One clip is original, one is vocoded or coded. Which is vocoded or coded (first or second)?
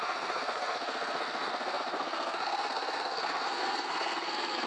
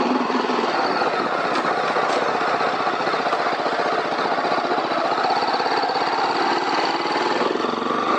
first